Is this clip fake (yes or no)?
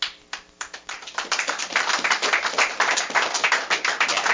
no